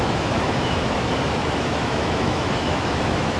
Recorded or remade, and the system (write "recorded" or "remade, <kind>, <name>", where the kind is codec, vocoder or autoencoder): remade, autoencoder, DAC-VAE